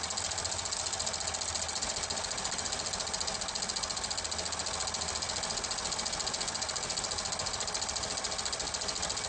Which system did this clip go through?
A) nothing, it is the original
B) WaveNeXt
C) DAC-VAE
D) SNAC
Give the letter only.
A